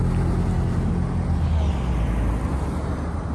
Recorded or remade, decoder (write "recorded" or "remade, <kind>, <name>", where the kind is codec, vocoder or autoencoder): recorded